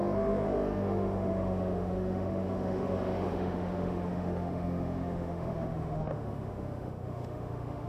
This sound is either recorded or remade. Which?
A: remade